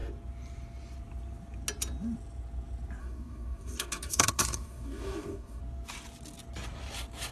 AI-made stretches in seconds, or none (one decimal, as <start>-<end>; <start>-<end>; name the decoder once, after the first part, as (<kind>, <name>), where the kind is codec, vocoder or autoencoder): 3.0-5.6 (codec, DAC)